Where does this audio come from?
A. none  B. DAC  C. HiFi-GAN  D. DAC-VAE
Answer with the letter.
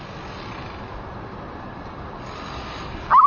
A